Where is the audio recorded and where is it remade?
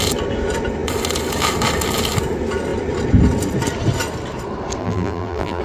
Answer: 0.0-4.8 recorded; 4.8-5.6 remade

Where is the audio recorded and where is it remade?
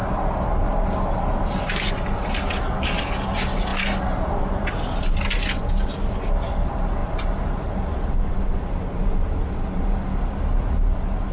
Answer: 0.0-11.3 recorded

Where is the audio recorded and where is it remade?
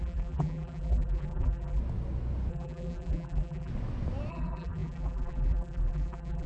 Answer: 0.0-1.8 remade; 1.8-2.5 recorded; 2.5-3.7 remade; 3.7-4.3 recorded; 4.3-6.5 remade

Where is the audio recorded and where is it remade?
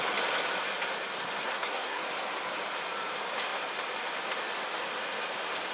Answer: 0.0-1.4 recorded; 1.4-2.0 remade; 2.0-5.7 recorded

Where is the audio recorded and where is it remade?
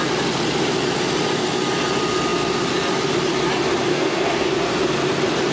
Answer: 0.0-3.9 recorded; 3.9-4.5 remade; 4.5-5.5 recorded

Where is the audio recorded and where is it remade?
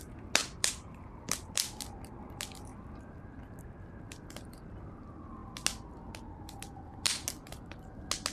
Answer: 0.0-0.4 recorded; 0.4-1.2 remade; 1.2-2.7 recorded; 2.7-3.6 remade; 3.6-8.3 recorded